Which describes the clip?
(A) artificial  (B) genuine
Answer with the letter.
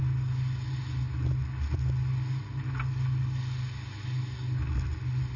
B